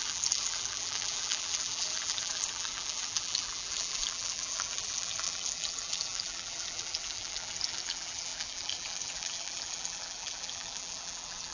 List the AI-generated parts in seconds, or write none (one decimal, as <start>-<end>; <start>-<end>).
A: 0.0-11.5